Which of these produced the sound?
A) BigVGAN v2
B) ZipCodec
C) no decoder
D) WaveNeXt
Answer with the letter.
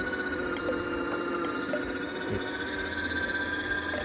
C